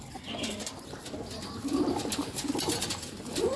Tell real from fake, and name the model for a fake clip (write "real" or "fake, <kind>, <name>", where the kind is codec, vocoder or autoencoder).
real